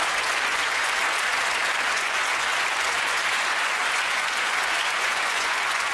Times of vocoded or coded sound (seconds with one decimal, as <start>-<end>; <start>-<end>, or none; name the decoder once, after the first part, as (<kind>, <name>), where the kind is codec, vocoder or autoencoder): 0.0-5.9 (vocoder, Vocos)